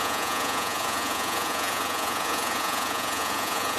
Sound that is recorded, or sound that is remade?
remade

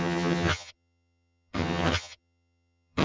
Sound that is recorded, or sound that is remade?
remade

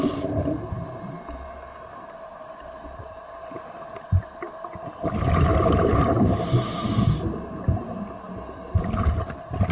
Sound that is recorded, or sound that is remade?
recorded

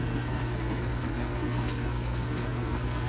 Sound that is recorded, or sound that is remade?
remade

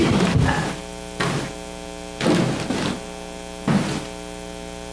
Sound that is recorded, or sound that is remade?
recorded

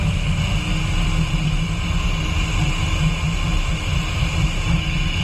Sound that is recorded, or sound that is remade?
recorded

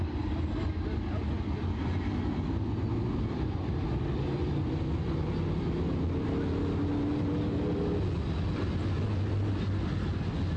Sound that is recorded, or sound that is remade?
recorded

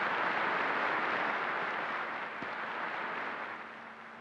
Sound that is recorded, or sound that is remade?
recorded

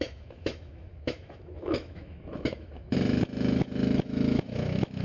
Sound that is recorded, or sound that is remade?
remade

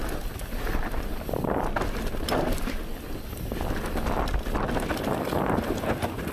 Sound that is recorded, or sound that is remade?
recorded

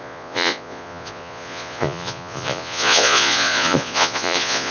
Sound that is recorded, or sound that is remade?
remade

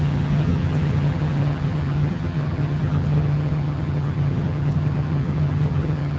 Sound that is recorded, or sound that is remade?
remade